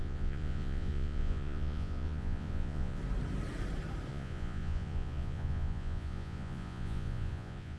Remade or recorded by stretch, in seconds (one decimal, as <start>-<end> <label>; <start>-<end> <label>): 0.0-3.0 remade; 3.0-4.1 recorded; 4.1-7.8 remade